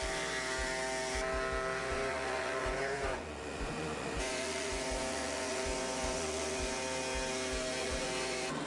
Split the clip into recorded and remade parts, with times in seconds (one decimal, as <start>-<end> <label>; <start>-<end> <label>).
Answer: 0.0-1.8 recorded; 1.8-6.8 remade; 6.8-7.8 recorded; 7.8-8.7 remade